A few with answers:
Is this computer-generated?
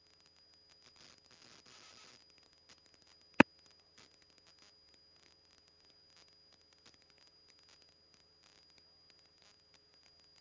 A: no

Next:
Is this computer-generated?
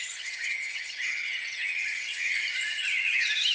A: yes